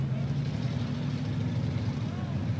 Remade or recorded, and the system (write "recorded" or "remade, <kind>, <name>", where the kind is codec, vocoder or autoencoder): recorded